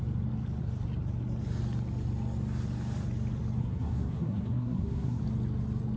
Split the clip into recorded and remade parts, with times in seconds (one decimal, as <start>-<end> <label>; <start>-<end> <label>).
0.0-3.6 recorded; 3.6-5.2 remade; 5.2-6.0 recorded

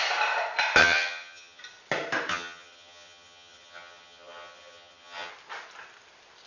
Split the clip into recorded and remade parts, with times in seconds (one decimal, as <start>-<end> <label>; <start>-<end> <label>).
0.0-0.8 recorded; 0.8-1.6 remade; 1.6-2.3 recorded; 2.3-5.3 remade; 5.3-6.5 recorded

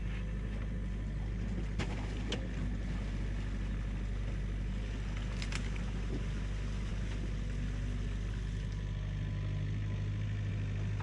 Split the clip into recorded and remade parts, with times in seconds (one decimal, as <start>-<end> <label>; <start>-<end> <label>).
0.0-11.0 recorded

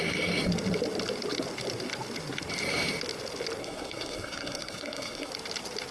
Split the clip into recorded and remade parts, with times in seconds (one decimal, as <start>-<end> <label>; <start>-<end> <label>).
0.0-3.6 recorded; 3.6-5.3 remade; 5.3-5.9 recorded

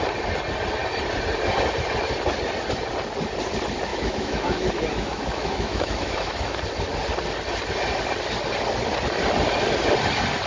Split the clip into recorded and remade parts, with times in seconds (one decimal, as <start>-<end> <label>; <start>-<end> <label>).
0.0-3.9 recorded; 3.9-6.6 remade; 6.6-10.5 recorded

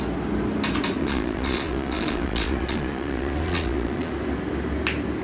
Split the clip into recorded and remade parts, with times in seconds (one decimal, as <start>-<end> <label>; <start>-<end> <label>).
0.0-1.0 recorded; 1.0-4.1 remade; 4.1-5.2 recorded

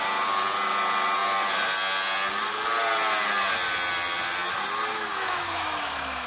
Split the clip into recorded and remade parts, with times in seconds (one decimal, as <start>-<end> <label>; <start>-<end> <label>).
0.0-4.9 recorded; 4.9-6.3 remade